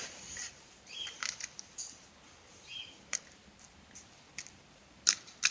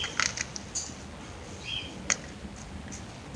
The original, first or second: second